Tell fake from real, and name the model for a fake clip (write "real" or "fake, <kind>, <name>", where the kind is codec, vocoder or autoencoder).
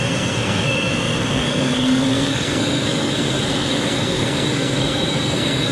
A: fake, codec, SNAC